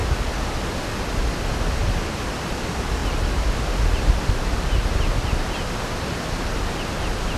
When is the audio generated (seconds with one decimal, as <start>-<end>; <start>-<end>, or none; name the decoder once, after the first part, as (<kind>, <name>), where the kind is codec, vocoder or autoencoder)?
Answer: none